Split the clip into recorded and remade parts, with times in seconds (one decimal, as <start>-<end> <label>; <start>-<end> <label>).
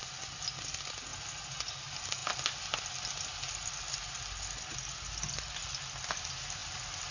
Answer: 0.0-7.1 recorded